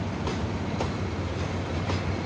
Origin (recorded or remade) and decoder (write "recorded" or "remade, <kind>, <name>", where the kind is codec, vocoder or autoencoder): remade, vocoder, BigVGAN v2